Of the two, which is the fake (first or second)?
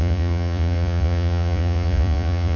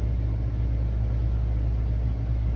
first